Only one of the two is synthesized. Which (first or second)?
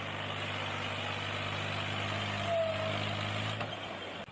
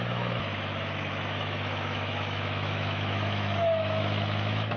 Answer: second